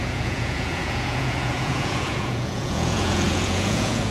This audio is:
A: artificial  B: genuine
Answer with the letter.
A